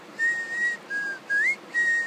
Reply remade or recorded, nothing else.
recorded